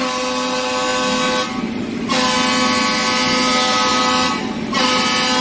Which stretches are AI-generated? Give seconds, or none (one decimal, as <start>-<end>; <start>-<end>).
none